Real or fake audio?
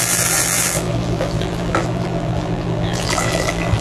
fake